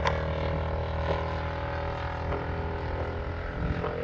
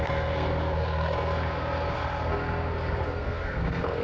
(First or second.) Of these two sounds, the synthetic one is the second